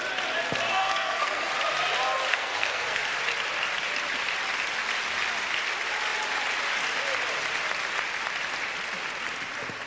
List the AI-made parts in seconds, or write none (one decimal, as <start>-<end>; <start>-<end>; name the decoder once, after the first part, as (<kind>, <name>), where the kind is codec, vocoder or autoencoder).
0.7-1.5 (codec, SNAC); 2.3-3.1